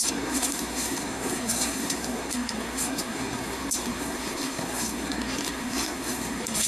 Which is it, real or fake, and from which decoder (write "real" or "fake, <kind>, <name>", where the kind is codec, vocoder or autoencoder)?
fake, codec, SNAC